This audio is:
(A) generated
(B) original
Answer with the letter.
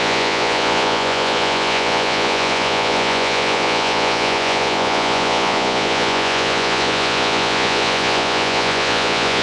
A